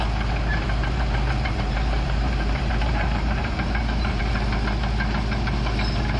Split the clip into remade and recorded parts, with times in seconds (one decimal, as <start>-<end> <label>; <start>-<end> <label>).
0.0-0.5 recorded; 0.5-4.2 remade; 4.2-6.2 recorded